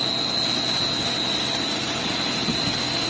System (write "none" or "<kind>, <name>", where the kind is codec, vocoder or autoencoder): none